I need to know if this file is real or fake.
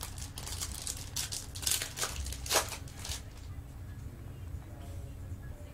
real